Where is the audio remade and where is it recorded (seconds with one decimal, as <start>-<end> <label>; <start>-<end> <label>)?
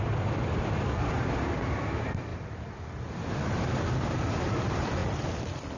0.0-2.3 recorded; 2.3-3.9 remade; 3.9-5.0 recorded; 5.0-5.8 remade